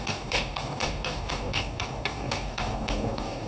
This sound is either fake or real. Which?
fake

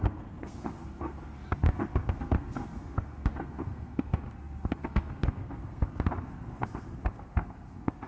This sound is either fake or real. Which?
fake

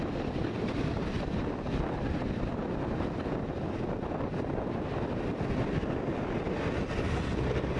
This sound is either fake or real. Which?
real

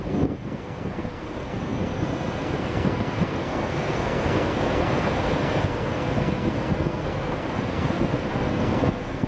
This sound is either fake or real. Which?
fake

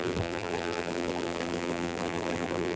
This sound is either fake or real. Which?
fake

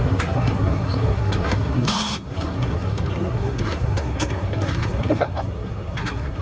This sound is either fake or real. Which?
fake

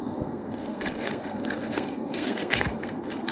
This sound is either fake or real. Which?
fake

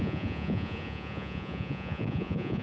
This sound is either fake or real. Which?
fake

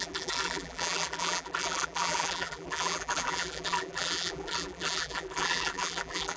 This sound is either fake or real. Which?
fake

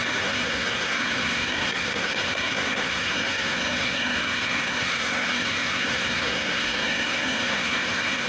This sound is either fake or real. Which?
fake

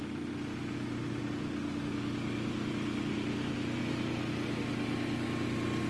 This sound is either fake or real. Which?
real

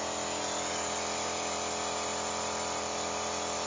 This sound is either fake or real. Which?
fake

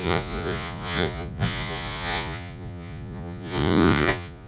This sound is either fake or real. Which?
fake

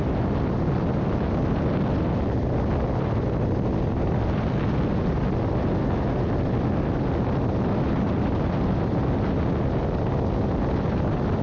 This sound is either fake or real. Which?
real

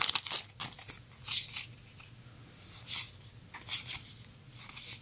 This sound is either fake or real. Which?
real